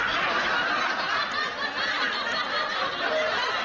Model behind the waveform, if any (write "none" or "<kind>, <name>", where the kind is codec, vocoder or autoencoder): none